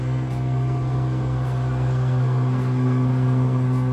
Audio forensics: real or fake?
fake